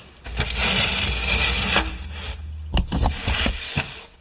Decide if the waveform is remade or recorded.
recorded